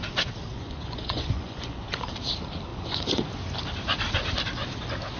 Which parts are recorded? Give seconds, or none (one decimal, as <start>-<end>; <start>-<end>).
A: 0.0-0.5; 1.9-2.7; 3.3-5.2